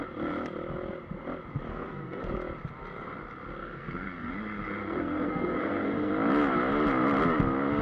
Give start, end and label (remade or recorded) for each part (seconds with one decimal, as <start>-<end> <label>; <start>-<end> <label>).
0.0-1.7 recorded; 1.7-2.2 remade; 2.2-3.6 recorded; 3.6-4.3 remade; 4.3-4.8 recorded; 4.8-6.1 remade; 6.1-7.8 recorded